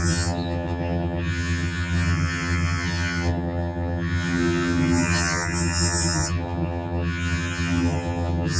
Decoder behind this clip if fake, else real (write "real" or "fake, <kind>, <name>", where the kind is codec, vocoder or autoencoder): fake, vocoder, HiFi-GAN